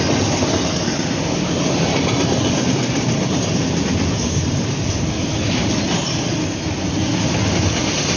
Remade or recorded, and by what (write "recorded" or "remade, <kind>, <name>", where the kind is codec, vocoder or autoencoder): recorded